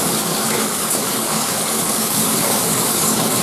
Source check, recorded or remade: remade